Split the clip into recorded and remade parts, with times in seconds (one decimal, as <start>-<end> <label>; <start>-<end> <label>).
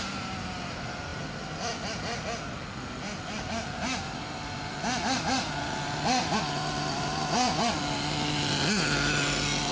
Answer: 0.0-9.7 recorded